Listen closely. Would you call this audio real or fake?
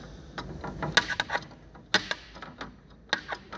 real